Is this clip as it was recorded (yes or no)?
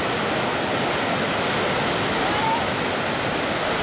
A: yes